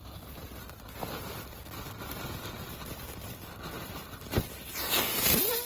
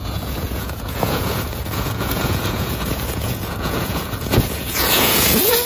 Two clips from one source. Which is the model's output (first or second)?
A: second